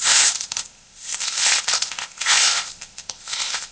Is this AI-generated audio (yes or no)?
yes